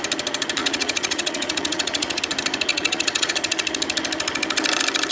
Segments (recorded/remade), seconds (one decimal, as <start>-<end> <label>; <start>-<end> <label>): 0.0-0.6 recorded; 0.6-2.2 remade; 2.2-2.7 recorded; 2.7-3.3 remade; 3.3-5.1 recorded